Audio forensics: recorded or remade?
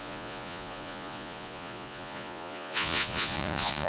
remade